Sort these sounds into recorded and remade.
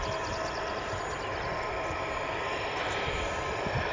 recorded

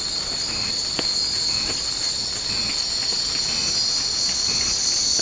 recorded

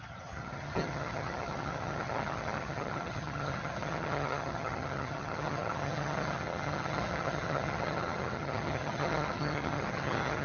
remade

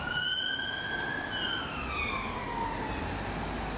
recorded